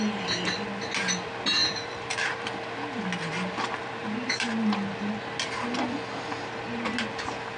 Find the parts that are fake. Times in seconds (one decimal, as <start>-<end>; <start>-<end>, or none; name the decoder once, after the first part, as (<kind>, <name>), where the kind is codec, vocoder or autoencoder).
1.6-2.5 (vocoder, BigVGAN v2); 3.3-4.6